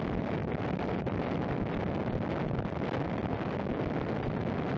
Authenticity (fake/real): real